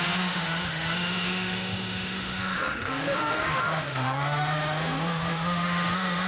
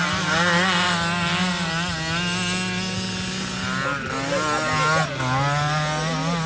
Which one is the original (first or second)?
second